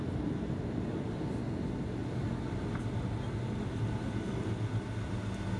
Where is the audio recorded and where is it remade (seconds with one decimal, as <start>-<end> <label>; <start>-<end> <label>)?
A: 0.0-5.6 recorded